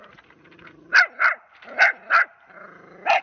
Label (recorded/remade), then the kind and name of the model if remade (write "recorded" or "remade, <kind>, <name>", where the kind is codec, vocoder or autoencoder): recorded